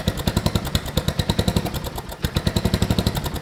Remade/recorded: recorded